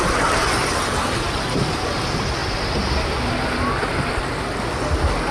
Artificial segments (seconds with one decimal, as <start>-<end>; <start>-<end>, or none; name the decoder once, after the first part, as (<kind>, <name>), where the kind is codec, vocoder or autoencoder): none